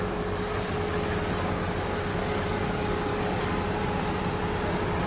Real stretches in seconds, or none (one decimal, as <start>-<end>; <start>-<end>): 0.0-2.1; 3.5-5.1